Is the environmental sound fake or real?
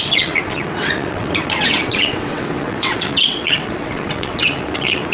fake